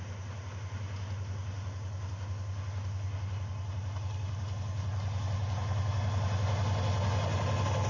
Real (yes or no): yes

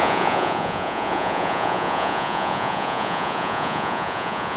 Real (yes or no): no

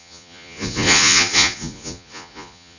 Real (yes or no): no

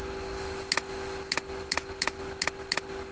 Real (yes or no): yes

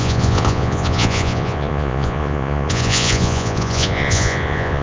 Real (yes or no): no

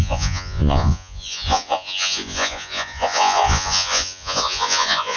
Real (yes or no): no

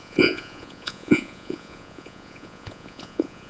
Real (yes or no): no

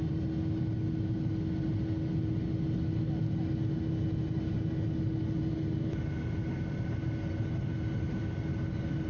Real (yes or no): yes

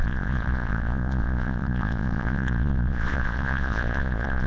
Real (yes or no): no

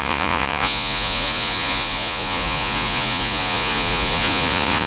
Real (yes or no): no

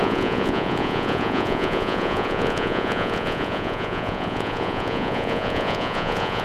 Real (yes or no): no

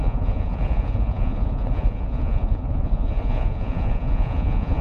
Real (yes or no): no